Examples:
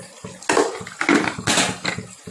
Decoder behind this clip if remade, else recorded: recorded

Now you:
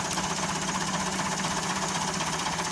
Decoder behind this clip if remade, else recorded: recorded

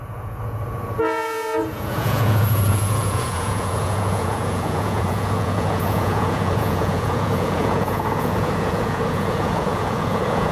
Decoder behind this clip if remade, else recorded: remade, vocoder, Vocos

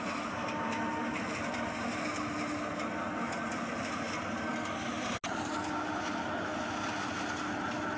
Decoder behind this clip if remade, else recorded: recorded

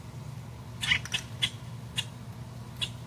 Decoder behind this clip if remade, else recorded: recorded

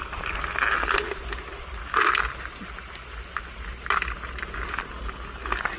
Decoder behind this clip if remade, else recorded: recorded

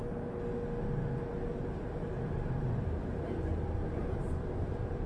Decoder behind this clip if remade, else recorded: recorded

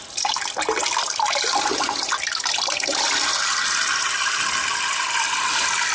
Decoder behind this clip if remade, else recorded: recorded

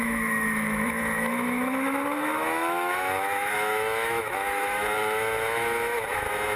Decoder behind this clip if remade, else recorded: remade, autoencoder, DAC-VAE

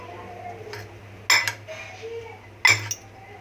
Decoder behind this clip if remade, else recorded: recorded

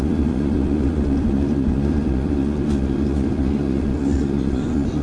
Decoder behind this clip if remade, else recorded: remade, vocoder, Vocos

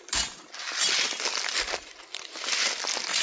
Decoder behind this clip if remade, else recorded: recorded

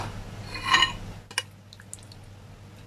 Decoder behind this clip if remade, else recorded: recorded